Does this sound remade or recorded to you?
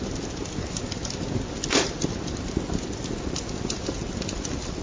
recorded